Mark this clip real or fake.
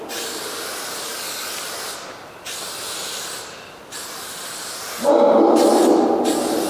real